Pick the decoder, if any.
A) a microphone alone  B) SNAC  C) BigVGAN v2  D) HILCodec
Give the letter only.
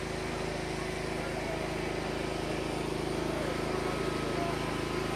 A